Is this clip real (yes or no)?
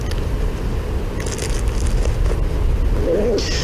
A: yes